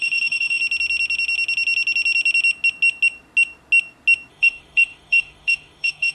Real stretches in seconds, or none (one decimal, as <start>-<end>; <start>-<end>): 0.6-4.3